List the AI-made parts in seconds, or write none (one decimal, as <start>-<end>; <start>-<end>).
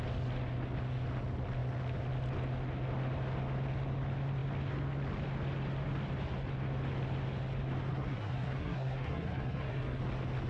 7.9-10.0